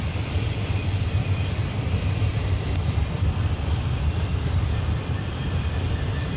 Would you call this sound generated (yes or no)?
yes